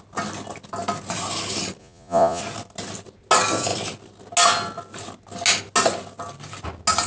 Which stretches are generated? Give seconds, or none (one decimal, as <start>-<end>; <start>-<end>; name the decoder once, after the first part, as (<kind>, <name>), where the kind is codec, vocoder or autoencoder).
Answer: 1.8-2.4 (vocoder, Vocos)

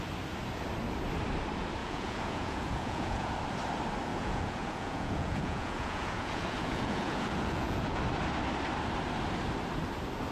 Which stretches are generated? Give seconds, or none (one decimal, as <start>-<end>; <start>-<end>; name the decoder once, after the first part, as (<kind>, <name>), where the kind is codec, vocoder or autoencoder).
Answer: 1.8-3.3 (vocoder, Vocos); 4.1-8.0